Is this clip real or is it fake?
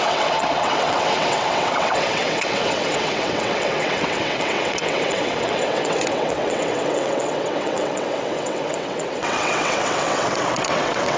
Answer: fake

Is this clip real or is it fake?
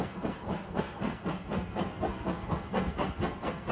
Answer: fake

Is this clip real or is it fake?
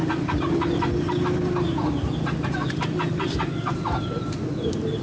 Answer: real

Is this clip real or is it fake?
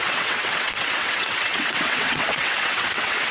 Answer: fake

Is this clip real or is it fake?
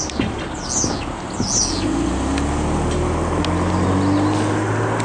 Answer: real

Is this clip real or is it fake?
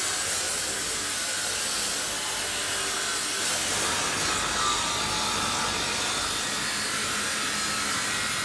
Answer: real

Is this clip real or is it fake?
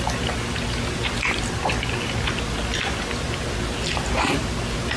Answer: real